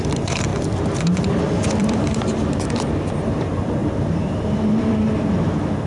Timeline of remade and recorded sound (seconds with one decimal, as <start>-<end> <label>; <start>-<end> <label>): 0.0-0.5 remade; 0.5-1.8 recorded; 1.8-5.9 remade